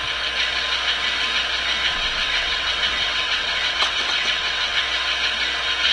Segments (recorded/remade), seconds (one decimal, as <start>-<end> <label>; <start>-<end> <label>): 0.0-1.9 recorded; 1.9-4.8 remade; 4.8-5.9 recorded